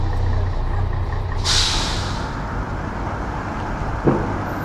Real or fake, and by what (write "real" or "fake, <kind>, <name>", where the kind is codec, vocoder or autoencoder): real